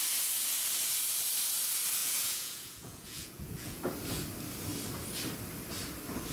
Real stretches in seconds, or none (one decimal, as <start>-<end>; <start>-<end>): 0.0-2.0; 3.8-6.3

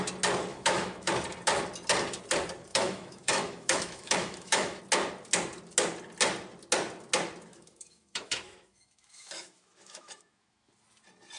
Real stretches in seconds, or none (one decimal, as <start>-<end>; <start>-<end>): 0.0-0.5; 1.1-2.7; 4.8-7.5; 10.7-11.4

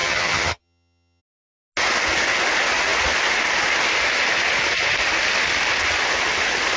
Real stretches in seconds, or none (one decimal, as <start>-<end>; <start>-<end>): 1.2-6.8

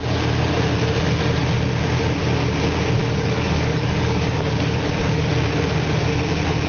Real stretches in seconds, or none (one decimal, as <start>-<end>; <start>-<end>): 0.0-3.0; 5.3-6.7

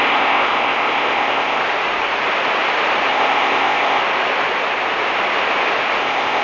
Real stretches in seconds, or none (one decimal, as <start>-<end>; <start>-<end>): 1.6-3.1; 4.0-6.0